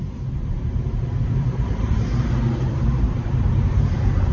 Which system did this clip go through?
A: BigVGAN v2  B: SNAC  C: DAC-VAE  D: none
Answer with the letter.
A